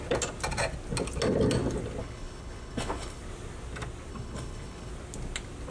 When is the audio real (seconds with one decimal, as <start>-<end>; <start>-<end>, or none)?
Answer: 0.0-2.0; 3.2-4.1; 4.9-5.7